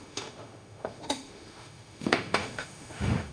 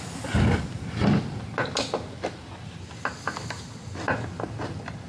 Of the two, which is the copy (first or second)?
first